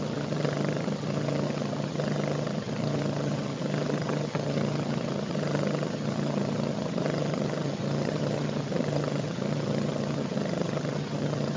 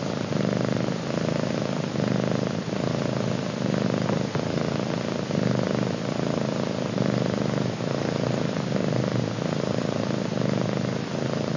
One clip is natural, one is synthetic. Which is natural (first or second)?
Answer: second